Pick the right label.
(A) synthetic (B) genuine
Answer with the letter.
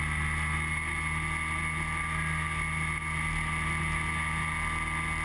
B